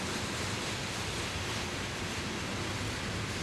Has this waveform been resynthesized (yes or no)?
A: no